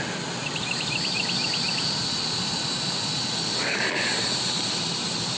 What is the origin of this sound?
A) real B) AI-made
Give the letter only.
A